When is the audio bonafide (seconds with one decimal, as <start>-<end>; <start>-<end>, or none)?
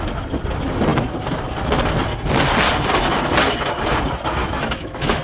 0.0-4.4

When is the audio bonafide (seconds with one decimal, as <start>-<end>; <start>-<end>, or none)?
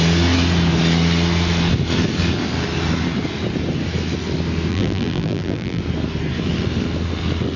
0.0-4.7; 5.8-7.6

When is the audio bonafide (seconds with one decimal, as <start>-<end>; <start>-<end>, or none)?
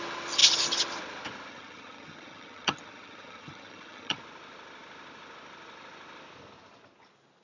0.0-1.5; 4.2-7.4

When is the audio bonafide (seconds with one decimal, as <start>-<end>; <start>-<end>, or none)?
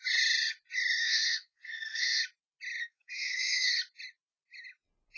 0.0-1.0; 2.2-2.8; 3.7-5.2